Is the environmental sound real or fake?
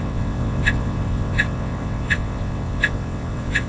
fake